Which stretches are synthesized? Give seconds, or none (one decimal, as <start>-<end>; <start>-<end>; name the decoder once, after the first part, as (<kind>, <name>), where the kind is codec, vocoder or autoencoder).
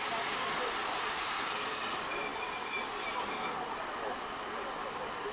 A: none